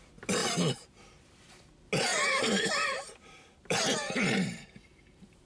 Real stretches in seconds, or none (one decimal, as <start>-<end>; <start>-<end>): 0.0-0.4; 1.0-2.1